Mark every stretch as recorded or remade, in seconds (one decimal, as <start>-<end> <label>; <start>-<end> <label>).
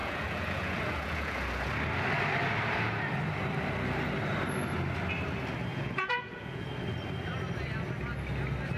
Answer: 0.0-1.7 remade; 1.7-5.7 recorded; 5.7-6.7 remade; 6.7-8.8 recorded